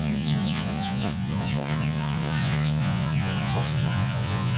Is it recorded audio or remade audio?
remade